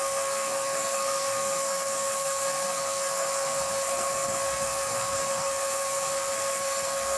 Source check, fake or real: fake